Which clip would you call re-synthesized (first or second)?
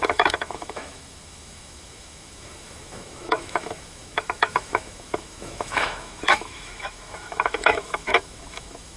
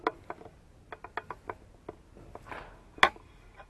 first